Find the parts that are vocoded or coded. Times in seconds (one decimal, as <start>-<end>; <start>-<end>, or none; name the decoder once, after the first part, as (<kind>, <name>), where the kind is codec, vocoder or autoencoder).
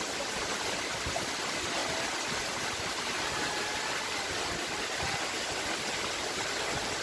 none